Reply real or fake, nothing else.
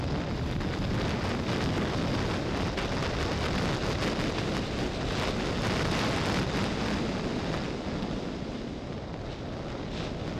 real